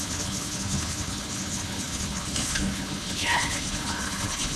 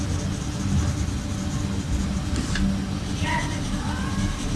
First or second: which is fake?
first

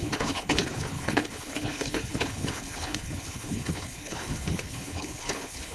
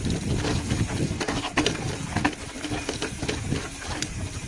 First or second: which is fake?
first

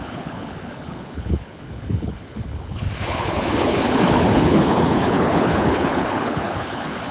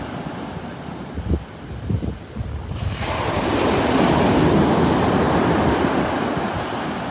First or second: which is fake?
first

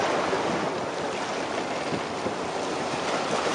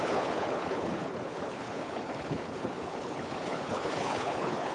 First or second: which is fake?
second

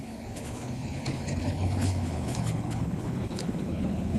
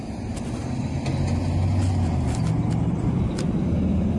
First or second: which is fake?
first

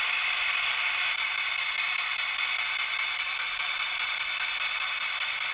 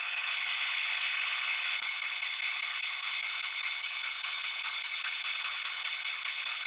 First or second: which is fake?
second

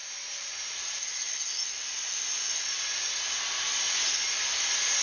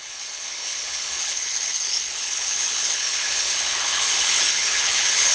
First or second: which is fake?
second